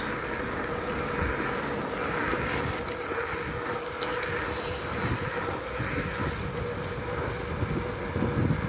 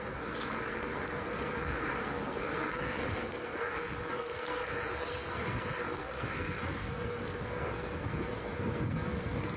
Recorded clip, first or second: first